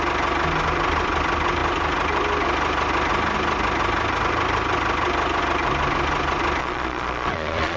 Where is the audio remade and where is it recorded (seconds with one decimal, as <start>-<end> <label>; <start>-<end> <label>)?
0.0-6.6 recorded; 6.6-7.8 remade